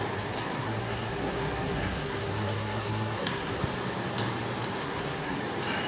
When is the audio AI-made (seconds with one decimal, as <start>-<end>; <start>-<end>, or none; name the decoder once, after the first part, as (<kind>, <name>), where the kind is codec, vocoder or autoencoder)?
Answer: 0.4-3.6 (codec, SNAC); 4.8-5.4